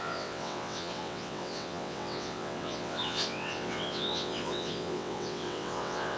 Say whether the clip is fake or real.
fake